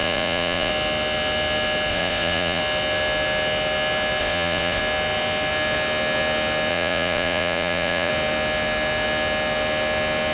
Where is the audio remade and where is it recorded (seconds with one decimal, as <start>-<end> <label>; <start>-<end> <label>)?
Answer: 0.0-0.7 remade; 0.7-1.9 recorded; 1.9-2.6 remade; 2.6-4.2 recorded; 4.2-4.8 remade; 4.8-6.7 recorded; 6.7-8.1 remade; 8.1-10.3 recorded